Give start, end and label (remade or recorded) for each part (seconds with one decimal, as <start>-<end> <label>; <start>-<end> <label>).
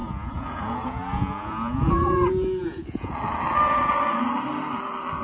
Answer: 0.0-3.1 remade; 3.1-5.2 recorded